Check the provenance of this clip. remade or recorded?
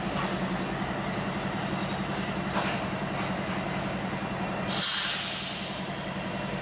recorded